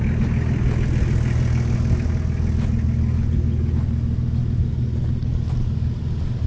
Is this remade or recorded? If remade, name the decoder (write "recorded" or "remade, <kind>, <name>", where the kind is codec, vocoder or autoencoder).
recorded